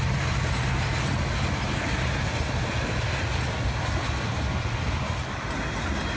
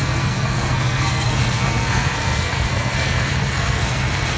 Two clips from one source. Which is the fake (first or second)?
second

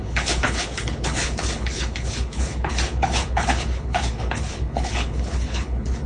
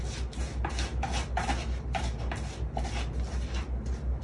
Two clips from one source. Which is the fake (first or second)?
first